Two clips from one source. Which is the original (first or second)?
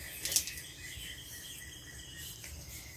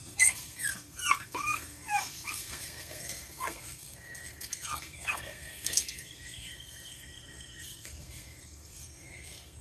first